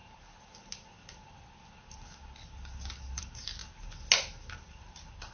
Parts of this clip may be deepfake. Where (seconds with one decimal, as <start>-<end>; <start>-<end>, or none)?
none